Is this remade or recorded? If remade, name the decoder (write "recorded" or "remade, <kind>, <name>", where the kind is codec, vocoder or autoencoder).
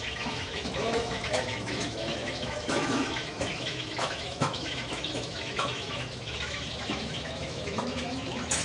remade, autoencoder, DAC-VAE